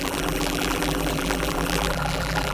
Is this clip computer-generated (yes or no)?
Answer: yes